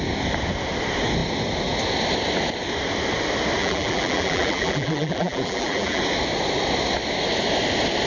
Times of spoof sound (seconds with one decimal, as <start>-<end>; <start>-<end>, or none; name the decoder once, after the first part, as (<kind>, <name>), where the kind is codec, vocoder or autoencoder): 3.6-6.0 (vocoder, BigVGAN v2)